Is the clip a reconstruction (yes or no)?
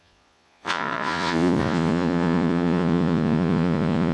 yes